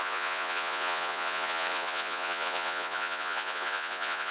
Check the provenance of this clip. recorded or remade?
remade